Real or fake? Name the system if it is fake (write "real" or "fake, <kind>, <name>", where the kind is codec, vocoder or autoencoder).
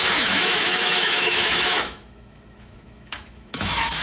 fake, autoencoder, DAC-VAE